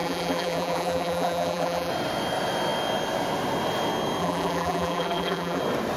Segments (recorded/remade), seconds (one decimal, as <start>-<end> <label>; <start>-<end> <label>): 0.0-1.9 remade; 1.9-4.2 recorded; 4.2-5.6 remade; 5.6-6.0 recorded